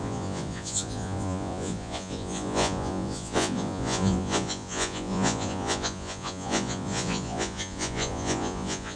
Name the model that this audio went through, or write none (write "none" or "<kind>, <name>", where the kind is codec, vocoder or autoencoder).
vocoder, Vocos